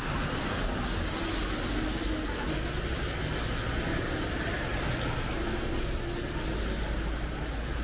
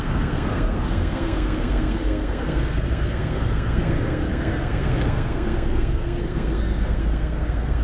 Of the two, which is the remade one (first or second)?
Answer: second